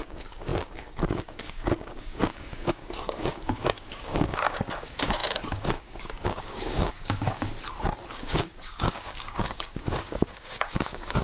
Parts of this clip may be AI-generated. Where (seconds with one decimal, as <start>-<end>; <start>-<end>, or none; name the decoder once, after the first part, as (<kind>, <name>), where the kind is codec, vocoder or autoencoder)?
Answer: 0.0-7.5 (codec, DAC); 8.1-11.2